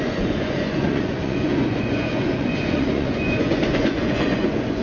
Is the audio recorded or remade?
remade